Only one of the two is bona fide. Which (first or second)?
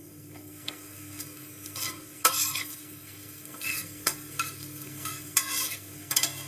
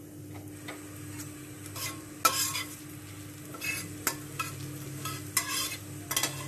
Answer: second